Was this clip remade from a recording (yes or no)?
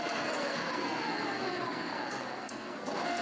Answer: yes